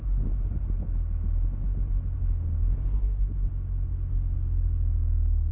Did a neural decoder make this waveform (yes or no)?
no